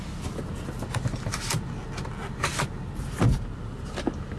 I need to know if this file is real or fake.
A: real